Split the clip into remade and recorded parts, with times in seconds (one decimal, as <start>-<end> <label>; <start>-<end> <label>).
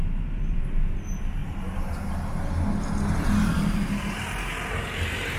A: 0.0-1.4 remade; 1.4-3.3 recorded; 3.3-5.4 remade